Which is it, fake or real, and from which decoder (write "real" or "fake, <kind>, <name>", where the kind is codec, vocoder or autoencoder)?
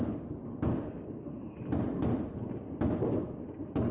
real